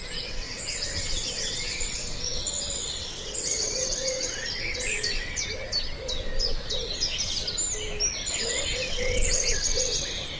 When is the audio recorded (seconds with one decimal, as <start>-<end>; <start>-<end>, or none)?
5.4-8.3